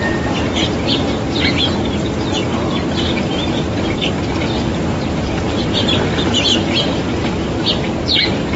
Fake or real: real